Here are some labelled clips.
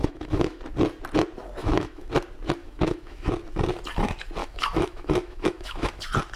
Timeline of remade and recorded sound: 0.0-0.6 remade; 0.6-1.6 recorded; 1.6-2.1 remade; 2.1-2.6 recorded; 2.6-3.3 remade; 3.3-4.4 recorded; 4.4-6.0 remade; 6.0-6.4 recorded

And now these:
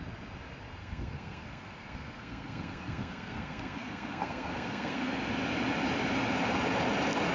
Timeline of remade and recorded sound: 0.0-0.8 recorded; 0.8-5.1 remade; 5.1-7.3 recorded

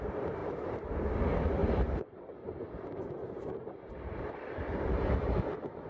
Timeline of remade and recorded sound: 0.0-0.4 recorded; 0.4-0.9 remade; 0.9-1.6 recorded; 1.6-5.1 remade; 5.1-5.9 recorded

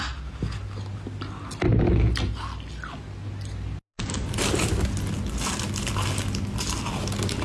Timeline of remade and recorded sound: 0.0-7.4 recorded

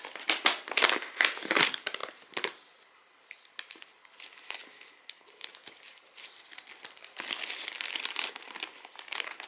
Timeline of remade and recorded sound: 0.0-9.5 recorded

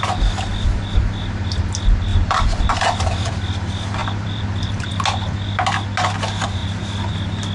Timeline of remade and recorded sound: 0.0-0.5 recorded; 0.5-1.2 remade; 1.2-2.1 recorded; 2.1-2.7 remade; 2.7-4.0 recorded; 4.0-4.9 remade; 4.9-7.5 recorded